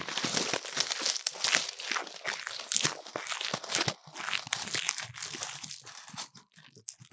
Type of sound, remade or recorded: recorded